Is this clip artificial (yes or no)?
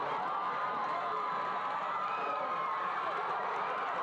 no